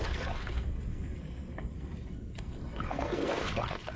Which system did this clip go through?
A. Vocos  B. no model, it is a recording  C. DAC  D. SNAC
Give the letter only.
D